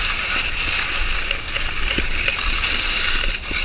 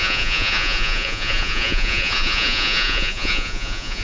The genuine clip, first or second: first